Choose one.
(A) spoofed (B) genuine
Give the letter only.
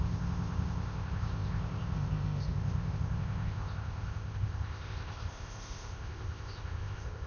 A